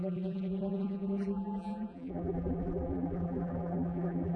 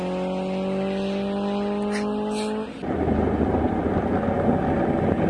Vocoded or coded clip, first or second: first